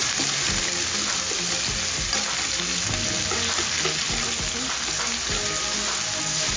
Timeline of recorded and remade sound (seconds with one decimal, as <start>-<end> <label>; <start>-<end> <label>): 0.0-0.7 remade; 0.7-6.6 recorded